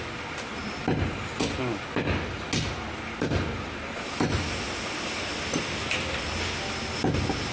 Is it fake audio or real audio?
real